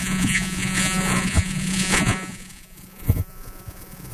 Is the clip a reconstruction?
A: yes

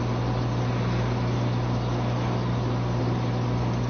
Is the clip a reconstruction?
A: no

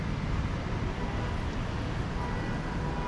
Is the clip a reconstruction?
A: no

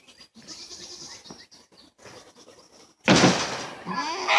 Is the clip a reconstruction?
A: no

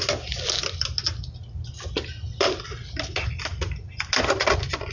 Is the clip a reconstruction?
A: no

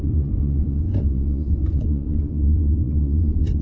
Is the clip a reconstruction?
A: yes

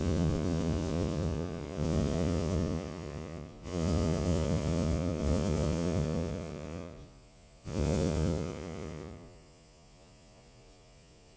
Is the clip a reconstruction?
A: yes